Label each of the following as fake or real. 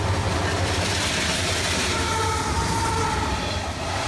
real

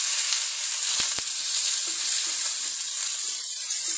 real